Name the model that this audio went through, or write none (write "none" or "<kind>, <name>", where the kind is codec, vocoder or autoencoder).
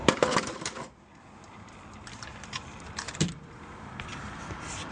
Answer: vocoder, BigVGAN v2